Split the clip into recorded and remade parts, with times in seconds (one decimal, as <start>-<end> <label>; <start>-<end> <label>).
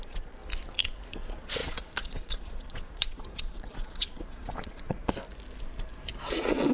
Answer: 0.0-0.4 remade; 0.4-1.1 recorded; 1.1-5.0 remade; 5.0-6.3 recorded; 6.3-6.7 remade